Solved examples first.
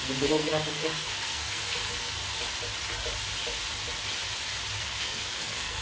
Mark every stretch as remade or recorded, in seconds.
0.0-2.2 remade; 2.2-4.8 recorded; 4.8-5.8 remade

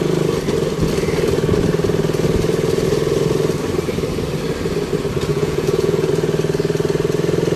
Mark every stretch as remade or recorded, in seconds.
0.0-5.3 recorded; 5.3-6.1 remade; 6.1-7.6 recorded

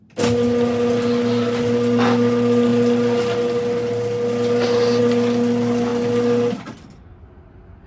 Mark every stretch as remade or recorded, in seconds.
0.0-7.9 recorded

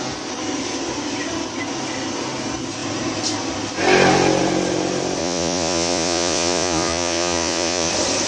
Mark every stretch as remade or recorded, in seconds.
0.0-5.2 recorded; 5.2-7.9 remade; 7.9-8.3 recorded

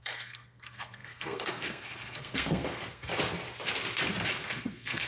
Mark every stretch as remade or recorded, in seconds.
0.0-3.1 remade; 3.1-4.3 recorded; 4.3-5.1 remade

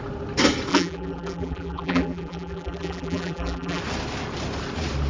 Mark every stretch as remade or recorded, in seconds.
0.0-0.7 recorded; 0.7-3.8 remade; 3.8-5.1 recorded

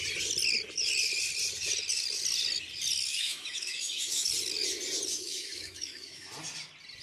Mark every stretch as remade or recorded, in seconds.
0.0-3.1 recorded; 3.1-4.3 remade; 4.3-5.1 recorded; 5.1-6.3 remade; 6.3-7.0 recorded

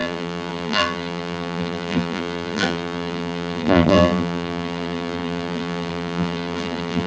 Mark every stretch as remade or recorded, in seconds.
0.0-7.1 remade